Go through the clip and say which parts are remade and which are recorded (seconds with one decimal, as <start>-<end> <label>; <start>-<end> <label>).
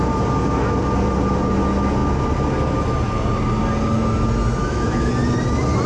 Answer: 0.0-4.6 recorded; 4.6-5.1 remade; 5.1-5.9 recorded